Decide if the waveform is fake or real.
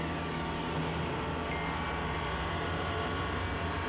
real